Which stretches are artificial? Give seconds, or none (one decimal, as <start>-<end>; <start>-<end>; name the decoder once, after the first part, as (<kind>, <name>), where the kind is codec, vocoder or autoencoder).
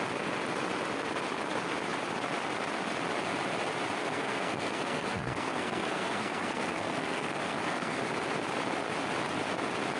4.0-8.0 (codec, SNAC)